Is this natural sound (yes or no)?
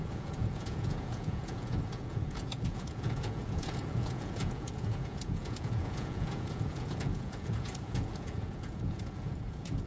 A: no